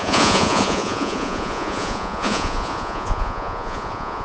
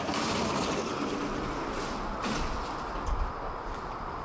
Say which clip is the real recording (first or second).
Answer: second